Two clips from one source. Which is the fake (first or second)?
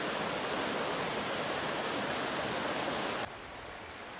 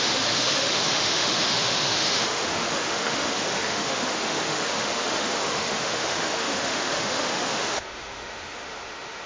second